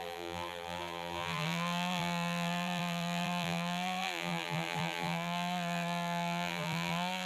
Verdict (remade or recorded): remade